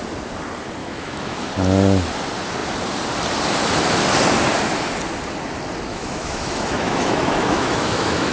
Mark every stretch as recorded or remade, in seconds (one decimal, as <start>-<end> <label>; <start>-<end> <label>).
0.0-0.8 recorded; 0.8-1.5 remade; 1.5-5.9 recorded; 5.9-8.3 remade